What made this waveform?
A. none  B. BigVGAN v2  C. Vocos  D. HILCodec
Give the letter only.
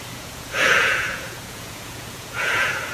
C